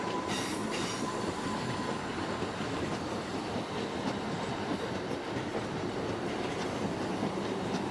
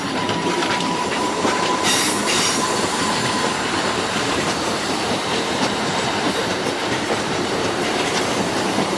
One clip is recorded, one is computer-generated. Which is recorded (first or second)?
first